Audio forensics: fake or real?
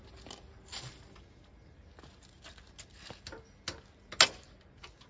real